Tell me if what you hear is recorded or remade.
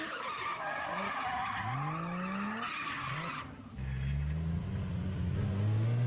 recorded